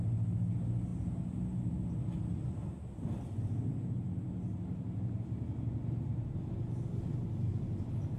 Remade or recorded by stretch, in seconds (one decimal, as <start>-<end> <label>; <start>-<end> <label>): 0.0-8.2 recorded